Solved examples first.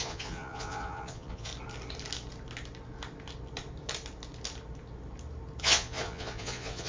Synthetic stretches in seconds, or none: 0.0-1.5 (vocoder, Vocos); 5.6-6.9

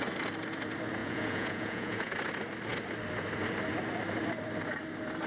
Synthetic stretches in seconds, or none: 1.0-2.1 (vocoder, Vocos)

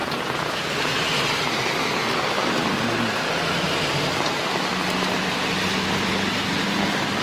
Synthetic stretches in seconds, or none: 0.0-0.7 (vocoder, Vocos)

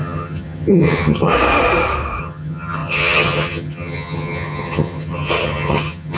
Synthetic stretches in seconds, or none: 0.0-1.3 (vocoder, HiFi-GAN); 2.2-6.2

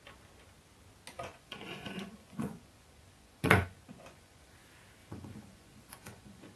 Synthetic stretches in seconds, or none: 1.1-4.5 (vocoder, Vocos); 5.0-6.6

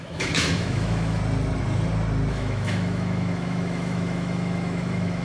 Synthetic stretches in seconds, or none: 0.0-1.2 (autoencoder, DAC-VAE); 2.3-5.2

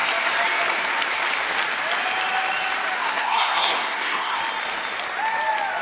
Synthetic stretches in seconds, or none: 3.0-4.4 (codec, SNAC)

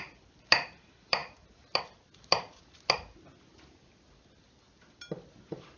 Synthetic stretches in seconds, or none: none